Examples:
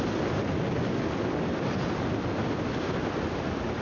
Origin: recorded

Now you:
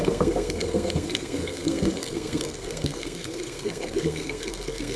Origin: remade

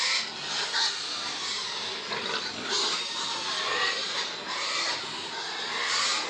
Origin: recorded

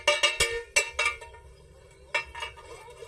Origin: recorded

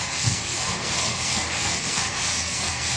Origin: remade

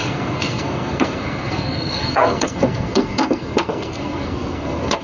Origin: remade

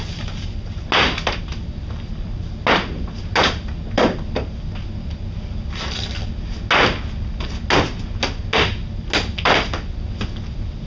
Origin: recorded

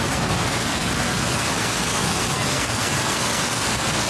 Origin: remade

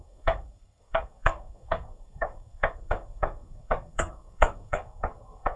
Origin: remade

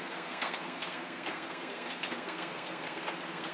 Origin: remade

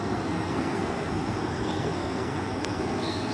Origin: remade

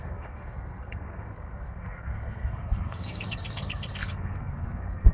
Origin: remade